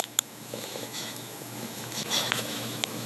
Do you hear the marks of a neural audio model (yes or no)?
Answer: yes